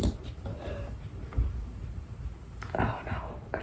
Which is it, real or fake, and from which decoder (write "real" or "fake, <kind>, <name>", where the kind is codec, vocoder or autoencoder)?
real